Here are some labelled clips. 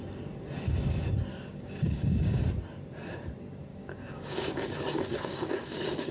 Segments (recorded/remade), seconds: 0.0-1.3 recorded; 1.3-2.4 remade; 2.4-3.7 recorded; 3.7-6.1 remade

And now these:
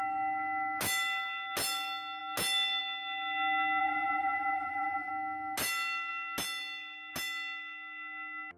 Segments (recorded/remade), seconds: 0.0-3.8 recorded; 3.8-5.1 remade; 5.1-8.6 recorded